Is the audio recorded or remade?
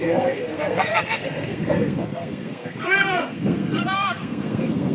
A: remade